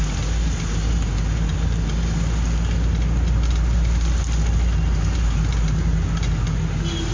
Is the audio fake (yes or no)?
no